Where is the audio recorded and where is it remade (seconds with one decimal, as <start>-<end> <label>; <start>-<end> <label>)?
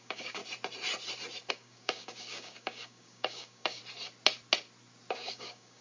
0.0-0.4 remade; 0.4-1.5 recorded; 1.5-3.8 remade; 3.8-5.1 recorded; 5.1-5.8 remade